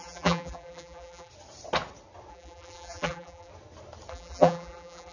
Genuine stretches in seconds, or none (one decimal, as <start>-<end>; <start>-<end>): 1.3-2.3; 3.5-4.1